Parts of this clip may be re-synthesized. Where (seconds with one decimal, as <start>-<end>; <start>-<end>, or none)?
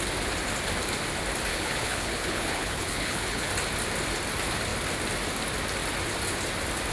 1.5-3.5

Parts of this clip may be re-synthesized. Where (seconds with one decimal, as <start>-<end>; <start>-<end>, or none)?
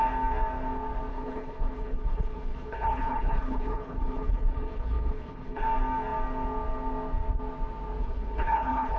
1.1-5.6; 8.0-9.0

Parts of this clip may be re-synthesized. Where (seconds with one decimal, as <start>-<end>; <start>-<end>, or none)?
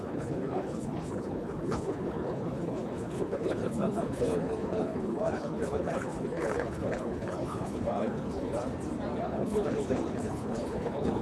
0.0-8.6; 9.2-11.2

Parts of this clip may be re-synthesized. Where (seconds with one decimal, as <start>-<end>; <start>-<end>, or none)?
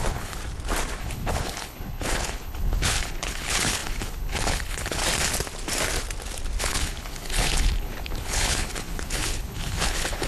0.0-0.4; 1.0-5.0; 6.6-10.3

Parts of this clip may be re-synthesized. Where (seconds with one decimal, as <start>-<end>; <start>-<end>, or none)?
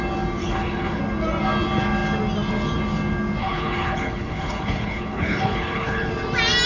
0.4-1.0; 3.4-6.1